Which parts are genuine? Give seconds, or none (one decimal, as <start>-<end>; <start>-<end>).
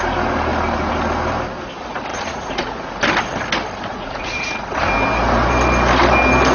0.0-2.1; 2.9-3.9; 4.5-6.5